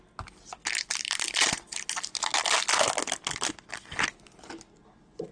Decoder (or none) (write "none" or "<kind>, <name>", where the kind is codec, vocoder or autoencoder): none